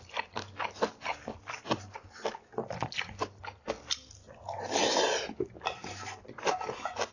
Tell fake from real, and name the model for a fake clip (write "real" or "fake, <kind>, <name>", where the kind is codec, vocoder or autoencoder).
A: real